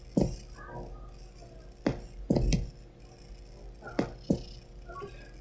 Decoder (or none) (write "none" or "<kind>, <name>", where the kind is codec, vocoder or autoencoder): none